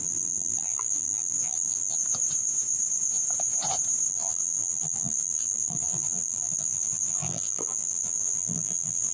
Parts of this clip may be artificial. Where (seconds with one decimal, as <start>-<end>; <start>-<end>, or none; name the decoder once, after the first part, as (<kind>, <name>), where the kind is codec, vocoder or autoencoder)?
0.0-2.0 (vocoder, BigVGAN v2); 4.1-9.1